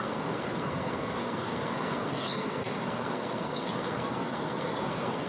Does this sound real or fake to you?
fake